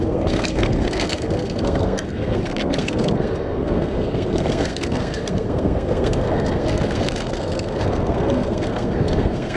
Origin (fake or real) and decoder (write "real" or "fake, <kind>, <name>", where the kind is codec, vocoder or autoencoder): fake, codec, SNAC